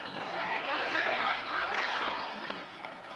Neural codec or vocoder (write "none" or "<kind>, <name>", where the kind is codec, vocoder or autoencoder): codec, SNAC